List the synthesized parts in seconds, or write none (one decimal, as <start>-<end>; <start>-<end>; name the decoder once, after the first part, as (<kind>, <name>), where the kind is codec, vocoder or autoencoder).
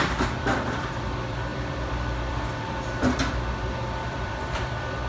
0.0-5.1 (vocoder, BigVGAN v2)